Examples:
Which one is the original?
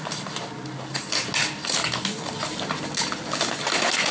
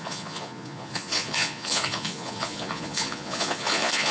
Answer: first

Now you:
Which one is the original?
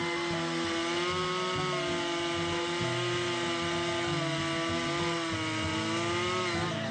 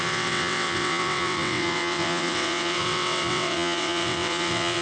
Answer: first